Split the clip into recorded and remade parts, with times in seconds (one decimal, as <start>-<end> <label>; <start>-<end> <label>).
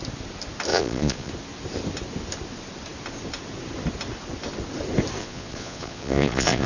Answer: 0.0-0.7 recorded; 0.7-1.3 remade; 1.3-5.2 recorded; 5.2-6.7 remade